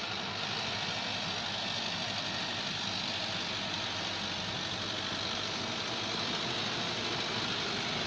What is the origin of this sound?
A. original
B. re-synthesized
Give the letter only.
A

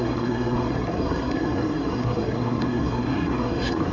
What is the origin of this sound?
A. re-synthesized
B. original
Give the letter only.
A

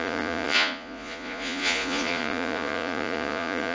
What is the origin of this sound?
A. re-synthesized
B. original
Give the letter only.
A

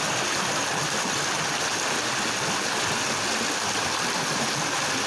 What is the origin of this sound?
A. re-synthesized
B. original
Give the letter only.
B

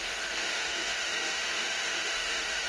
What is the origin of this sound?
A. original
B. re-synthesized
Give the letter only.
B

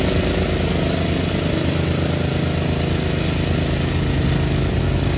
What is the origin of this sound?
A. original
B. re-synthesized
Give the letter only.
A